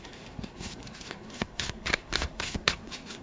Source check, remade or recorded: remade